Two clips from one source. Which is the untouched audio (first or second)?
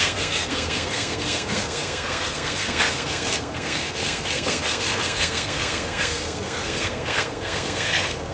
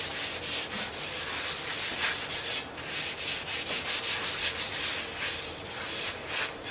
second